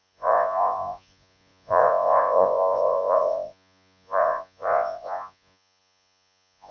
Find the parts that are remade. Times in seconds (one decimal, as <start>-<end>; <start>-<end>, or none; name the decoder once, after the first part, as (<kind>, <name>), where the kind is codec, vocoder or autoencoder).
0.0-6.7 (vocoder, Vocos)